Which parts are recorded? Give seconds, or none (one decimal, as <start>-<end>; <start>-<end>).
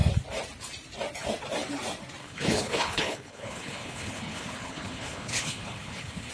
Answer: 0.0-2.2